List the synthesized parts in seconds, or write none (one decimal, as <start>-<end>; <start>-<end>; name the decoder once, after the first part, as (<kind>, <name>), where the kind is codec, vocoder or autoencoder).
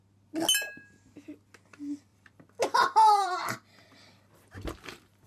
2.1-5.3 (vocoder, BigVGAN v2)